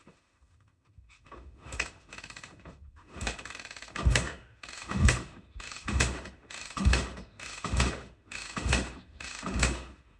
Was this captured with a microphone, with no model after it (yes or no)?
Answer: no